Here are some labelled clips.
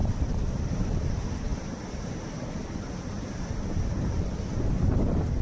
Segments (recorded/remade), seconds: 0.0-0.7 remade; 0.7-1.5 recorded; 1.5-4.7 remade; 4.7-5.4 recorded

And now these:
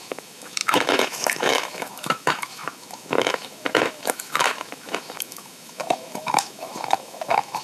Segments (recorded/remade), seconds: 0.0-7.6 remade

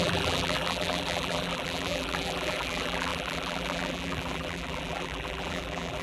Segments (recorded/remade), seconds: 0.0-6.0 remade

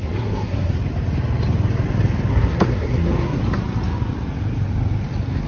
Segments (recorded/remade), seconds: 0.0-0.7 remade; 0.7-2.3 recorded; 2.3-3.4 remade; 3.4-5.5 recorded

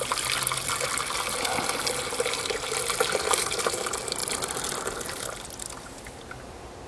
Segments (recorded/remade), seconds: 0.0-6.9 recorded

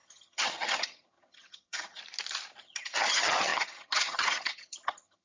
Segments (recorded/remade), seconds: 0.0-2.0 remade; 2.0-2.6 recorded; 2.6-5.2 remade

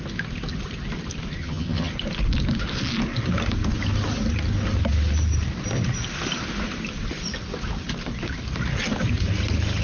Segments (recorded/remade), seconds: 0.0-1.4 recorded; 1.4-1.9 remade; 1.9-9.8 recorded